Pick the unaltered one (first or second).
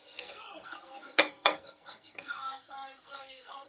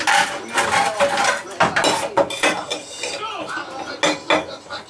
second